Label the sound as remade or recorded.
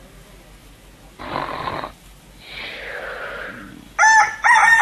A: recorded